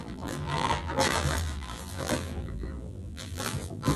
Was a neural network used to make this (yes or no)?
yes